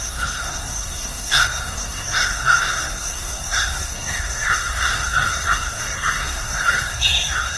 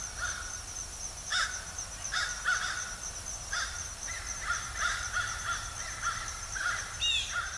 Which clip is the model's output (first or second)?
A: first